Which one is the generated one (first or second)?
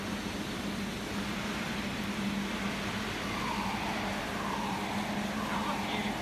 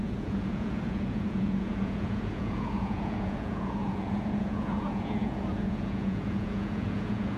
second